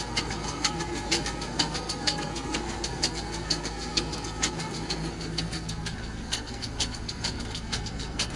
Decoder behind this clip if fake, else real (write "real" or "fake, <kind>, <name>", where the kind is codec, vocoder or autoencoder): fake, codec, SNAC